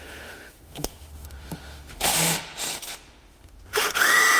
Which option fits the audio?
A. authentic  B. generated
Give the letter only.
B